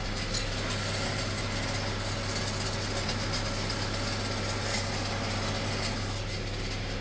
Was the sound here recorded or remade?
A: recorded